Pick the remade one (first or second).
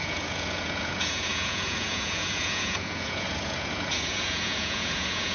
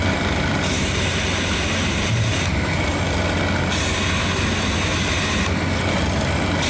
first